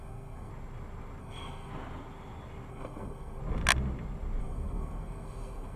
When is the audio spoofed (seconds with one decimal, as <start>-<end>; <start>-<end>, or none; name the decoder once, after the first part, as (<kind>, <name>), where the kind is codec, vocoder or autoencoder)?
0.0-0.5 (codec, SNAC); 1.2-1.7; 2.7-3.4; 4.4-5.8